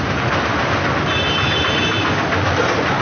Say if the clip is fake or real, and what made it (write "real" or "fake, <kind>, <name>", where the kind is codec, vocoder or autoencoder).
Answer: real